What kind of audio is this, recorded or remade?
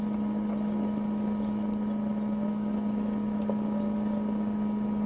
recorded